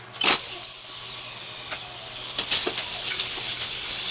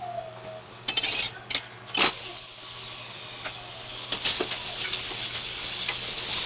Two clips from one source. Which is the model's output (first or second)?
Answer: first